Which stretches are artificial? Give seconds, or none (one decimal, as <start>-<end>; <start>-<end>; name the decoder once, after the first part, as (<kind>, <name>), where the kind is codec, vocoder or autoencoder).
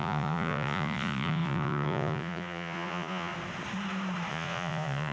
0.0-3.3 (vocoder, Vocos); 4.3-5.1